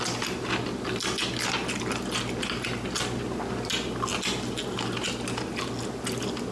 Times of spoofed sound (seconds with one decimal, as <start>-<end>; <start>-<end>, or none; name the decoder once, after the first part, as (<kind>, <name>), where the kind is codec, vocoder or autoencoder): none